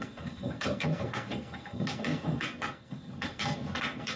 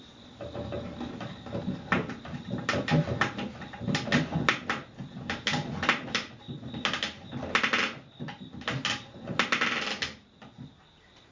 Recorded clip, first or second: second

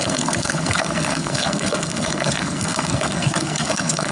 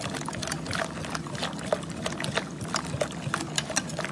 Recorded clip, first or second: second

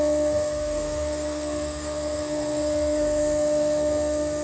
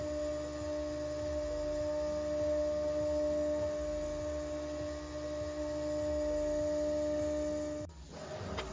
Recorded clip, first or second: second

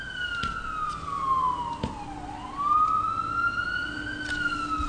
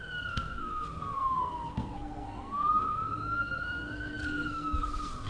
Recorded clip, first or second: first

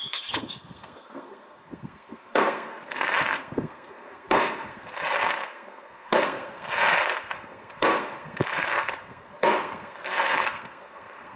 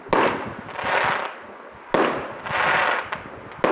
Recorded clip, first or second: second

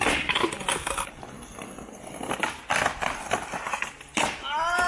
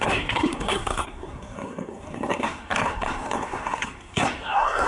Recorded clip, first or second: first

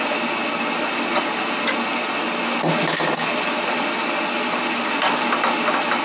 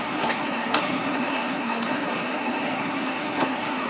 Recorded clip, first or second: first